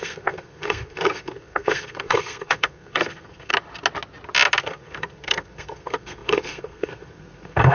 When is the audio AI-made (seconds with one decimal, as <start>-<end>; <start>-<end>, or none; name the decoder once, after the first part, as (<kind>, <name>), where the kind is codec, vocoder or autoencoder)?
0.0-3.5 (codec, SNAC); 4.6-7.7